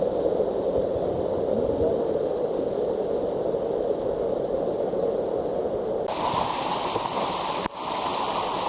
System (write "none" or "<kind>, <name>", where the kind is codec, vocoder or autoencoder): none